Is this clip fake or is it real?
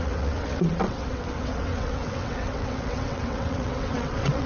fake